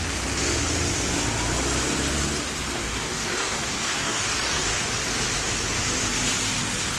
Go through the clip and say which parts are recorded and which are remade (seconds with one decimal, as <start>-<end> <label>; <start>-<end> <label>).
0.0-2.8 recorded; 2.8-4.8 remade; 4.8-7.0 recorded